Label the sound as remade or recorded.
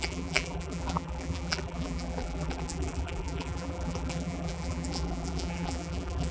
remade